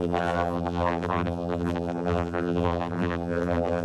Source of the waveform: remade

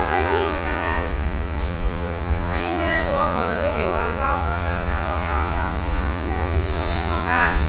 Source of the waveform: remade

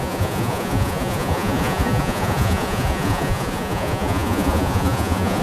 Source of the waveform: remade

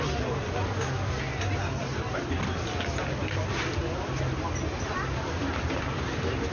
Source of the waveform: recorded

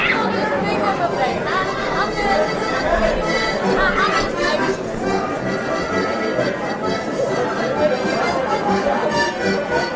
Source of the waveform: recorded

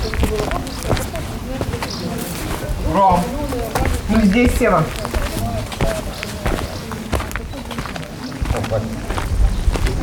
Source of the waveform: recorded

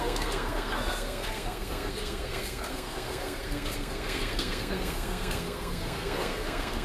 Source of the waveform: remade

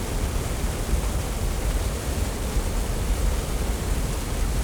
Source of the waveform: recorded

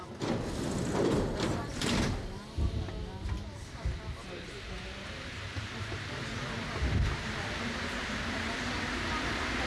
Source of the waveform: recorded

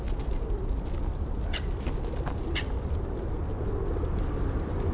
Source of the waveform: recorded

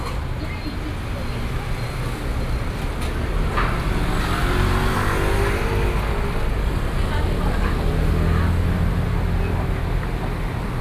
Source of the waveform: recorded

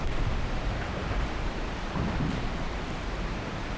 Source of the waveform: remade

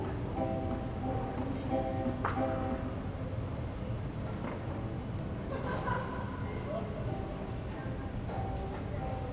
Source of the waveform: recorded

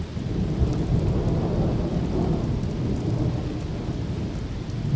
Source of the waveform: recorded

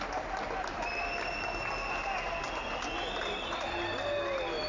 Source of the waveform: recorded